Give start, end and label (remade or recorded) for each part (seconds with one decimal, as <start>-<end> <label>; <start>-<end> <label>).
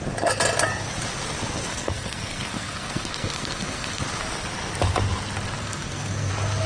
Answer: 0.0-1.7 recorded; 1.7-4.0 remade; 4.0-5.6 recorded; 5.6-6.3 remade; 6.3-6.7 recorded